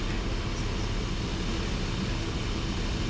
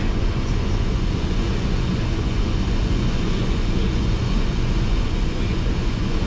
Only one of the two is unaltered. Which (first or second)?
first